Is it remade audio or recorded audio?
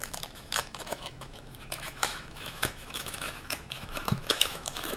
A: remade